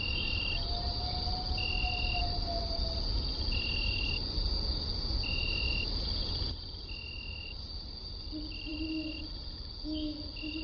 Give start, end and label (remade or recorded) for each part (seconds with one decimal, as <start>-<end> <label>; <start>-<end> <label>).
0.0-10.6 recorded